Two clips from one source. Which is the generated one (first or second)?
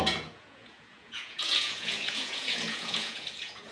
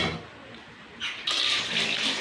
first